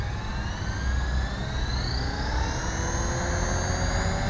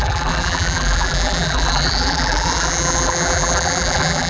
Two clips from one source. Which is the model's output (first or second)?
second